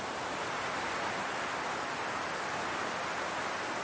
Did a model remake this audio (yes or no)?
no